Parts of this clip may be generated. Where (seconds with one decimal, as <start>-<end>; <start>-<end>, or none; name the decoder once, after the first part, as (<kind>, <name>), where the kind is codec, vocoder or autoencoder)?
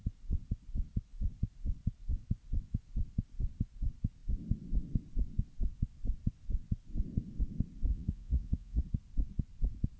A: 7.9-8.8 (vocoder, Vocos)